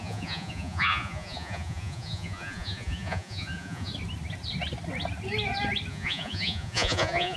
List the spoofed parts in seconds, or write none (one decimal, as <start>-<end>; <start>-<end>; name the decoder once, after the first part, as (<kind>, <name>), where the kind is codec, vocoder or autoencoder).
0.0-3.9 (vocoder, Vocos); 5.9-7.4